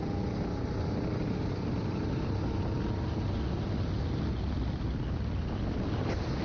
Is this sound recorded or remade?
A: recorded